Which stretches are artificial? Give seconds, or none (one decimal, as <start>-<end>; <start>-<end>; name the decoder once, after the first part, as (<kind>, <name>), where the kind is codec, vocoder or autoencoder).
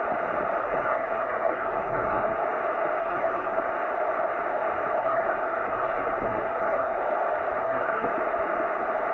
0.6-2.4 (codec, SNAC); 3.0-3.7; 5.0-7.0; 7.6-8.1